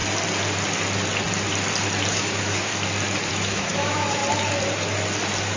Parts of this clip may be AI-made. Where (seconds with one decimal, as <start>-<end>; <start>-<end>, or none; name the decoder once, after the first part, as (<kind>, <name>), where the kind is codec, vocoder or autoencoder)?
2.1-2.7 (autoencoder, DAC-VAE); 3.3-4.2